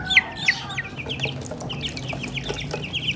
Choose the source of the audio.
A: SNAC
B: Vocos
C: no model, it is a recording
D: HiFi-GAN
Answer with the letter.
C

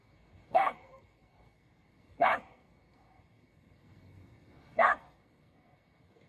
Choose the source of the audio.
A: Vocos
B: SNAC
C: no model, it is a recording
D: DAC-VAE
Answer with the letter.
B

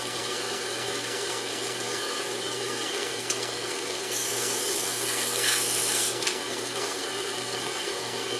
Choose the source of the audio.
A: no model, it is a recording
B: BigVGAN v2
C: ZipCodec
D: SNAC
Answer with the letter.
D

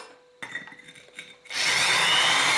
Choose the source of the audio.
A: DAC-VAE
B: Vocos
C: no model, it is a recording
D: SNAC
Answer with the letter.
C